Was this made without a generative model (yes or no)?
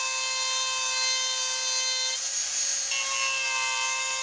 yes